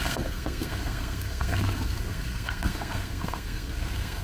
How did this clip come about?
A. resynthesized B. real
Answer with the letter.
A